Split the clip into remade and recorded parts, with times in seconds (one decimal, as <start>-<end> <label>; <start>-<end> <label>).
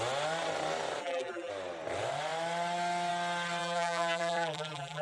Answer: 0.0-1.0 recorded; 1.0-1.5 remade; 1.5-3.6 recorded; 3.6-5.0 remade